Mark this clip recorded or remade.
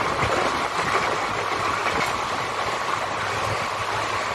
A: recorded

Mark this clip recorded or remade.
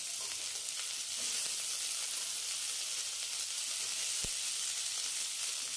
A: recorded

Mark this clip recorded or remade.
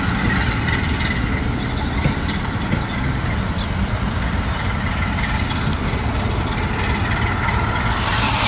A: recorded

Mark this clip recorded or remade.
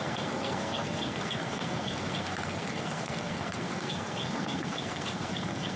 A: remade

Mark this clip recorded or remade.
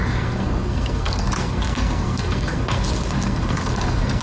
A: remade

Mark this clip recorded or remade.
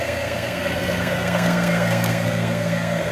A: remade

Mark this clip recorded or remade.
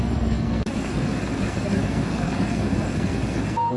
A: remade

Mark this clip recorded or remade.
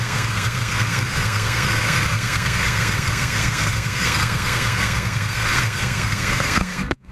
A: remade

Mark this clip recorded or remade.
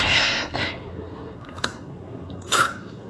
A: remade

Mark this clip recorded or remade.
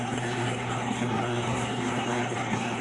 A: remade